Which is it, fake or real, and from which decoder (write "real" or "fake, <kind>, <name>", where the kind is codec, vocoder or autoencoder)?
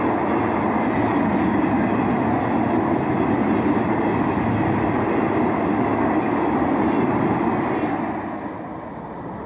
real